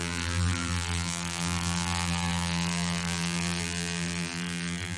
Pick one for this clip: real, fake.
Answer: fake